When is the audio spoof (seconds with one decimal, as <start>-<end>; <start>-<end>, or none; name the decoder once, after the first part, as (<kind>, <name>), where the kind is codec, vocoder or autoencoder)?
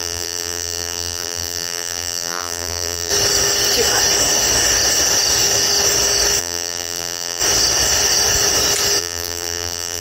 0.0-3.1 (vocoder, BigVGAN v2); 6.4-7.4; 9.0-10.0